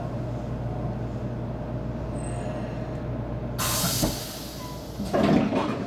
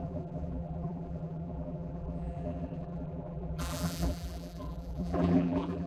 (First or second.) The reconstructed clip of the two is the second